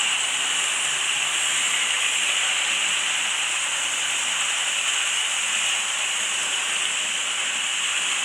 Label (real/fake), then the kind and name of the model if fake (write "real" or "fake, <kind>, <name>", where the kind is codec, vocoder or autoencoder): real